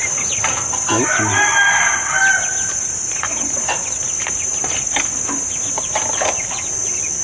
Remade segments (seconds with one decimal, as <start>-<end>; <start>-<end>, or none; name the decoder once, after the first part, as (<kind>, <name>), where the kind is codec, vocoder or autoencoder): none